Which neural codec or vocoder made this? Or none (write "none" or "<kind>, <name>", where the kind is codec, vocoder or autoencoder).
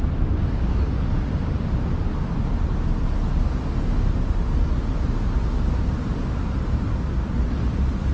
none